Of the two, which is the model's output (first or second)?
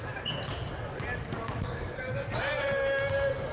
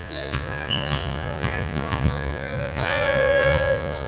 second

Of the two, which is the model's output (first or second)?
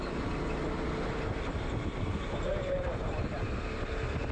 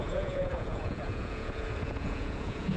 second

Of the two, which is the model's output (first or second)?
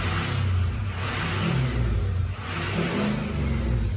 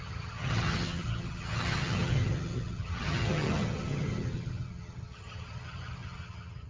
second